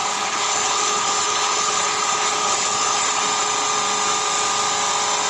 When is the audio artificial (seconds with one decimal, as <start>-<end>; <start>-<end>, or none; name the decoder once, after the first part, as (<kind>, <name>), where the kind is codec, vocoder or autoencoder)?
0.0-3.2 (codec, HILCodec)